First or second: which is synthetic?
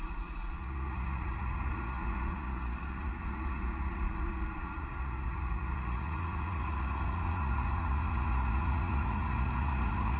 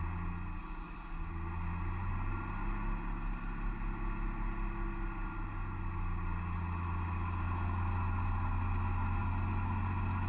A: first